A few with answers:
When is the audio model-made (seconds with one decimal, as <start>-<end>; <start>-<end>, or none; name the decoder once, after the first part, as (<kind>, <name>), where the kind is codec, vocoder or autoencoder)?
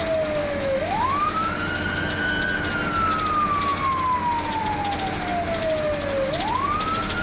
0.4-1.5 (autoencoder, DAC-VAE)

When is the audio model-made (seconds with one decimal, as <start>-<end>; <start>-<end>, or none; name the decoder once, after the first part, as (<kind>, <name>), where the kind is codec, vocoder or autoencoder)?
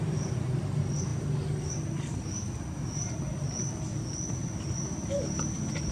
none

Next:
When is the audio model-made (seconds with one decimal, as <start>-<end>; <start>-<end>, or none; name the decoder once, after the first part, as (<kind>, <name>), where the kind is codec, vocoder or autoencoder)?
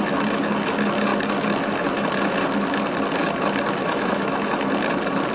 3.8-4.6 (autoencoder, DAC-VAE)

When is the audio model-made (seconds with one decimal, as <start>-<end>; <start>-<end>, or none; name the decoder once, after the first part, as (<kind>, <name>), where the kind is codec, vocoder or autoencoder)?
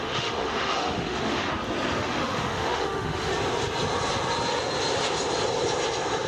0.0-1.5 (autoencoder, DAC-VAE); 2.0-3.3